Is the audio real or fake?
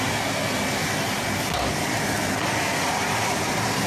real